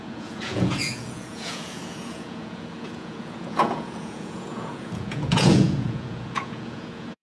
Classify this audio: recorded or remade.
remade